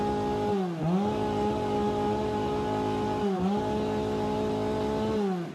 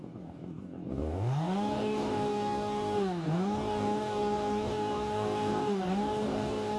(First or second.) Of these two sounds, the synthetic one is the second